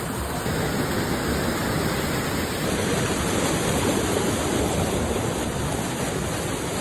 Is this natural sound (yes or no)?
yes